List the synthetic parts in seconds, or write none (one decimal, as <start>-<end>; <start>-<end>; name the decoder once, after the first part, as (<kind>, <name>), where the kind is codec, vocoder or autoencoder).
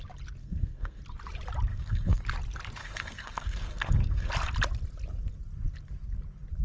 0.4-1.0 (codec, SNAC); 1.7-2.2; 2.8-4.3